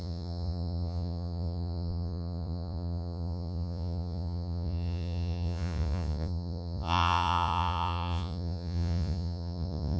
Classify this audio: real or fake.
fake